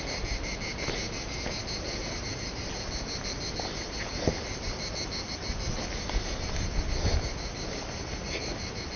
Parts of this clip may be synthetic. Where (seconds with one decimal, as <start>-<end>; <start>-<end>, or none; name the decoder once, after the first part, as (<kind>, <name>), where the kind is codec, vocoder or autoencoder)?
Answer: none